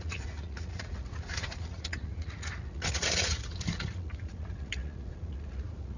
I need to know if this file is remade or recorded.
remade